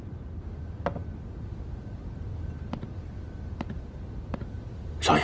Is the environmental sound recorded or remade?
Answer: recorded